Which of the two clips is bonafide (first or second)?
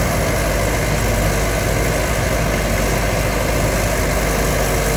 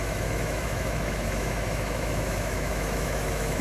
first